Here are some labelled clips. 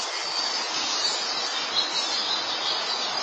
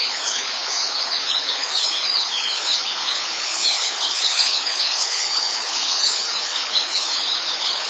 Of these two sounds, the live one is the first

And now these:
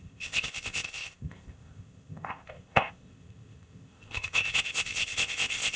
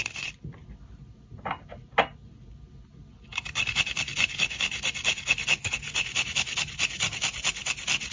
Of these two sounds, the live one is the second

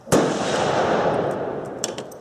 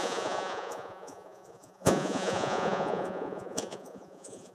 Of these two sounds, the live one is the first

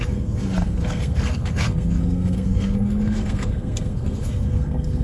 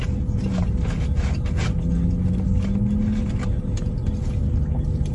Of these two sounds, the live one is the second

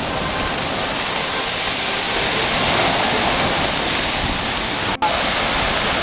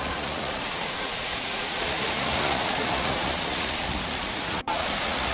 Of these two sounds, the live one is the first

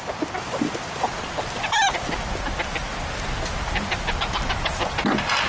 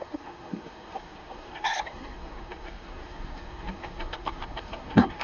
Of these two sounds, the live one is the first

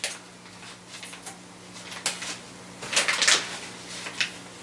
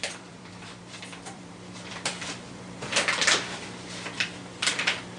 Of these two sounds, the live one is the first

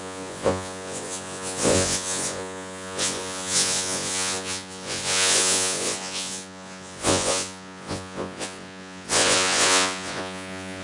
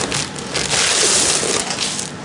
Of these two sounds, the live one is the second